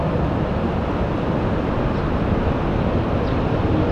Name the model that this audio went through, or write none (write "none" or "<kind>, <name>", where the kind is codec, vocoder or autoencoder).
none